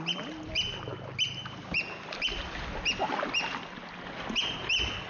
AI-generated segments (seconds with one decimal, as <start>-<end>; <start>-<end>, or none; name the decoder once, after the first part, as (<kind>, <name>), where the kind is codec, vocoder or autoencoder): none